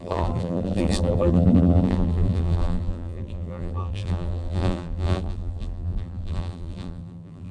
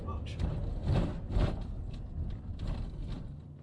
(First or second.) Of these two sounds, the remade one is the first